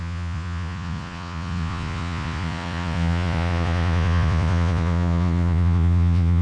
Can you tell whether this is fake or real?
fake